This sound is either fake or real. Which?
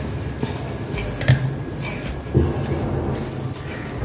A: real